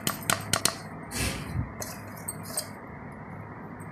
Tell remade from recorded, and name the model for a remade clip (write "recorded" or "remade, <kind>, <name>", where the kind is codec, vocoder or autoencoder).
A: recorded